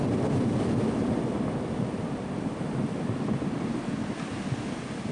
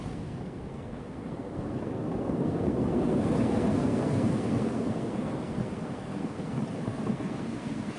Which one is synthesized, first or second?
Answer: second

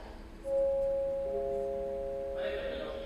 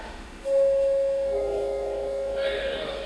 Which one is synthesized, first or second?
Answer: second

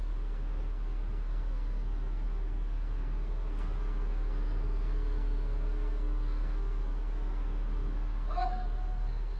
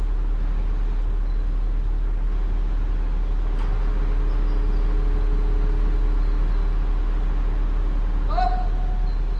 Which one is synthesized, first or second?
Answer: first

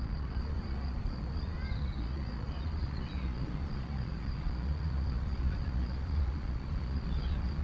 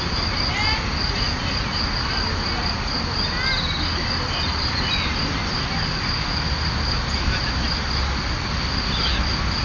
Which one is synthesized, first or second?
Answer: first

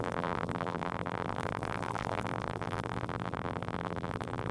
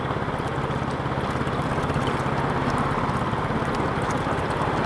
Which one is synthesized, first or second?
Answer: first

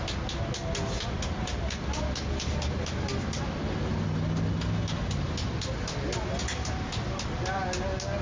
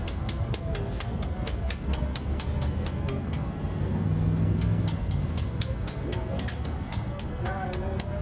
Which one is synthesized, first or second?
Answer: second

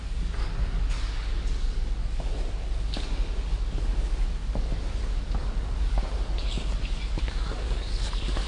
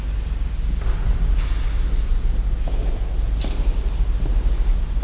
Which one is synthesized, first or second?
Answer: first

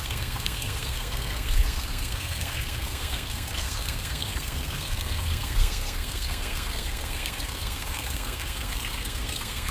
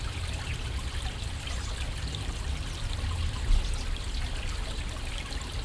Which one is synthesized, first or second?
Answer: first